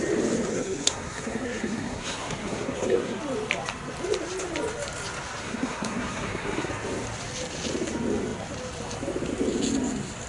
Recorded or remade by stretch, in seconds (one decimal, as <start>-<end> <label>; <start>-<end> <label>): 0.0-0.5 recorded; 0.5-3.2 remade; 3.2-5.4 recorded; 5.4-6.7 remade; 6.7-10.3 recorded